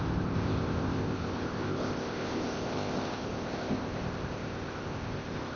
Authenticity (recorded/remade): remade